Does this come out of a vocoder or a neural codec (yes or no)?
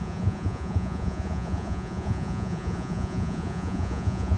yes